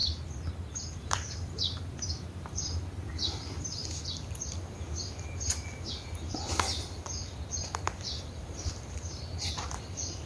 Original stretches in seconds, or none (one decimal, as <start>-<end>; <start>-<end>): 0.0-0.9; 3.8-8.3